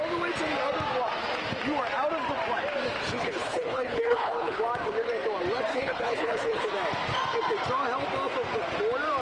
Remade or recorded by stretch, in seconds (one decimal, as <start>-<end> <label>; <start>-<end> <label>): 0.0-3.1 recorded; 3.1-4.6 remade; 4.6-5.7 recorded; 5.7-6.7 remade; 6.7-9.2 recorded